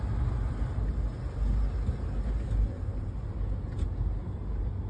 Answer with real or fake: real